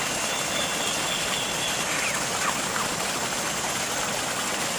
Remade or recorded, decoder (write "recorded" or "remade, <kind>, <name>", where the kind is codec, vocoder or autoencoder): recorded